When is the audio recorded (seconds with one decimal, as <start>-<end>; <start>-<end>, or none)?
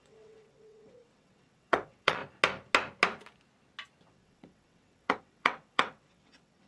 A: 2.2-4.1